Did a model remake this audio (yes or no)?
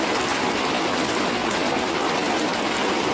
yes